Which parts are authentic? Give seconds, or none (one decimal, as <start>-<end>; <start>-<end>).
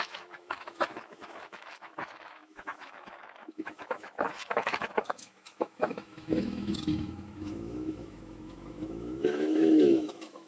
none